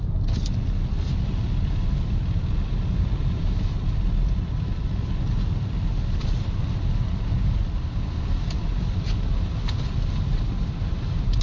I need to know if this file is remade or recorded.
recorded